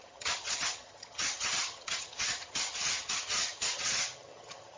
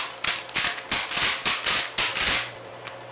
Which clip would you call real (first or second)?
second